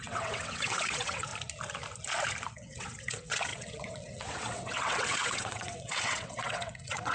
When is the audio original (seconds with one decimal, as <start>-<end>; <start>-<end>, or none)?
1.3-2.5